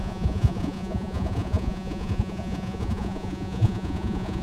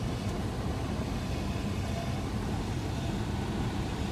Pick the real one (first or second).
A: second